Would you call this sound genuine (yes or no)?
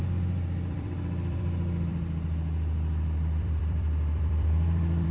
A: no